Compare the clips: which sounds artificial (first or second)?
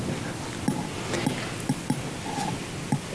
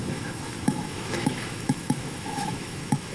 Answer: second